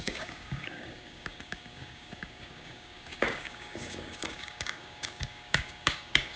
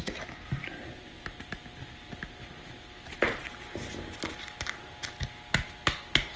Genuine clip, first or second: second